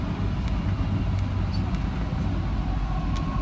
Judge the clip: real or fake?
real